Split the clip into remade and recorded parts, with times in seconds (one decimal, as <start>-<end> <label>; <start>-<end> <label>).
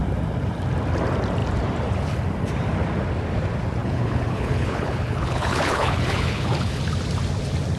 0.0-3.8 recorded; 3.8-6.8 remade; 6.8-7.8 recorded